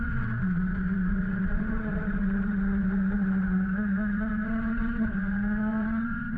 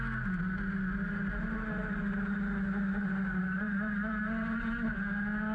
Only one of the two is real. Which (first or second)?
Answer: second